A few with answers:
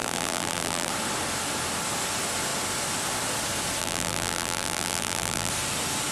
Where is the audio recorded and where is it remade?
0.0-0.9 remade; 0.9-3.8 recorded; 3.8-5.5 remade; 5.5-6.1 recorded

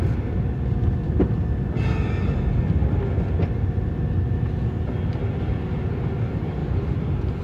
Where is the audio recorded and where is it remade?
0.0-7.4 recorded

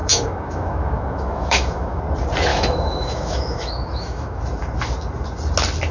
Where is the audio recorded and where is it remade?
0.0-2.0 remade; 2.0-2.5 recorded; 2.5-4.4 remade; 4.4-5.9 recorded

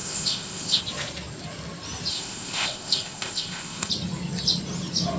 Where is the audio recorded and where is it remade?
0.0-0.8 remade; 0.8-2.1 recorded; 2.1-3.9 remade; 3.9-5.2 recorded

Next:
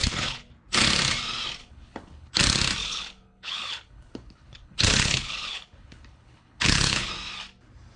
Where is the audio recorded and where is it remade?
0.0-0.5 remade; 0.5-1.6 recorded; 1.6-2.3 remade; 2.3-2.8 recorded; 2.8-7.1 remade; 7.1-8.0 recorded

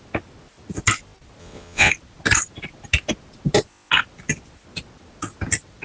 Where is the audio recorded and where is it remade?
0.0-1.4 recorded; 1.4-1.9 remade; 1.9-5.8 recorded